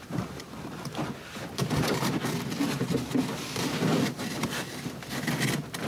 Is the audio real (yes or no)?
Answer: yes